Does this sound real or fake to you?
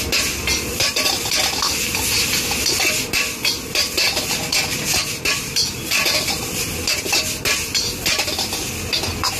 real